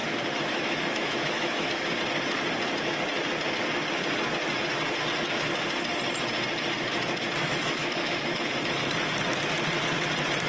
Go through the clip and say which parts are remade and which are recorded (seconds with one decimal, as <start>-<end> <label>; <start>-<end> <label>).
0.0-1.7 remade; 1.7-7.4 recorded; 7.4-8.9 remade; 8.9-10.5 recorded